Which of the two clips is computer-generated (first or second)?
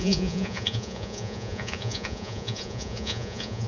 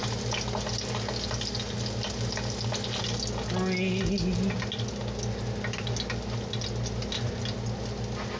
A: first